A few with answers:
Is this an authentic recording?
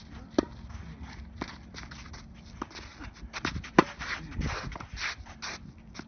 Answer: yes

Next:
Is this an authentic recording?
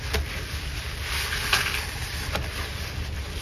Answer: yes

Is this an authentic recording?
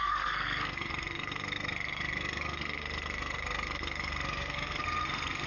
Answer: no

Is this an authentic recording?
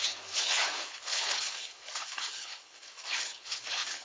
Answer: no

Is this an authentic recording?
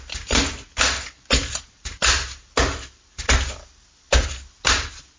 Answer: yes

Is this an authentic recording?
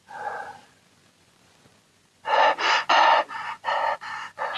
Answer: no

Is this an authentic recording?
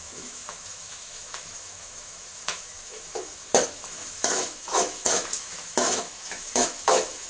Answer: no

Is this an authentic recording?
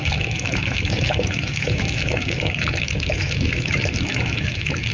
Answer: no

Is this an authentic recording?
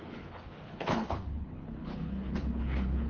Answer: no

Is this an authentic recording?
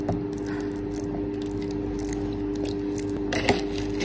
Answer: yes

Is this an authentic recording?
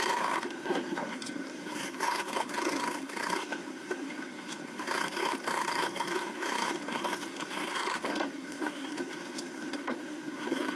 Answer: no